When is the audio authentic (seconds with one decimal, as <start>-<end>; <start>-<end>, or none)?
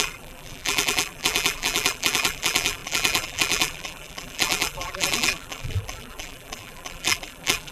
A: none